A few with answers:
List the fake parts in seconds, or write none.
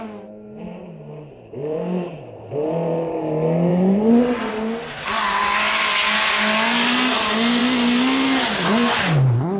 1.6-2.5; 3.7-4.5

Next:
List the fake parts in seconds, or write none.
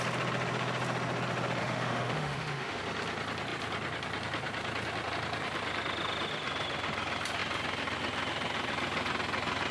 1.6-2.8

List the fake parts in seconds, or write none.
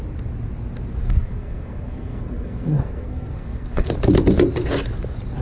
1.0-3.9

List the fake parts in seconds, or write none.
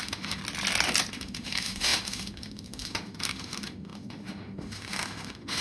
0.0-0.4; 1.1-5.6